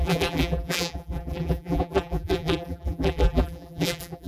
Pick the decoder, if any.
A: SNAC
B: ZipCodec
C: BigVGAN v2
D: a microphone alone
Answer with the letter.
C